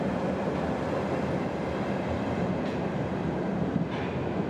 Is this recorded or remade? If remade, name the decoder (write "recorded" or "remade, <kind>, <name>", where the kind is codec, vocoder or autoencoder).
remade, vocoder, BigVGAN v2